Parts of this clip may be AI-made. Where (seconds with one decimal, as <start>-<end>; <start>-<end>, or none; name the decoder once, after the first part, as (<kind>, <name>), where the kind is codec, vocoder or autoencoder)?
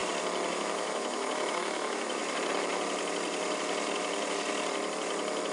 0.5-2.2 (autoencoder, DAC-VAE)